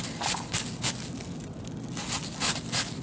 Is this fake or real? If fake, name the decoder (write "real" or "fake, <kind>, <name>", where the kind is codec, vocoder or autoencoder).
real